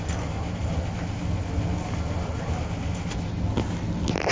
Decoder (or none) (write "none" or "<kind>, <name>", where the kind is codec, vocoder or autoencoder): none